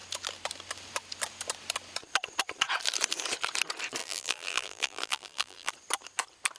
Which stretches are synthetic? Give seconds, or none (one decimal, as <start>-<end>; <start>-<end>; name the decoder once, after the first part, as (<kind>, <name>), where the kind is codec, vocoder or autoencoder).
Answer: 4.0-5.7 (vocoder, BigVGAN v2)